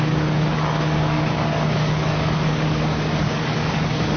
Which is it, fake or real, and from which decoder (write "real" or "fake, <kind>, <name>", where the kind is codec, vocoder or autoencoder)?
fake, codec, DAC